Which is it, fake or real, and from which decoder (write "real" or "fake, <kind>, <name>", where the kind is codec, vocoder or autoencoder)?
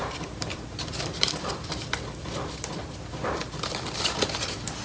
fake, vocoder, BigVGAN v2